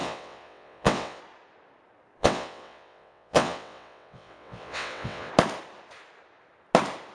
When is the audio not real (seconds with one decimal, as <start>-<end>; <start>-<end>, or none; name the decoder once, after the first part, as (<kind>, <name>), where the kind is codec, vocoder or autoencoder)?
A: 0.0-1.2 (vocoder, WaveNeXt); 2.2-5.3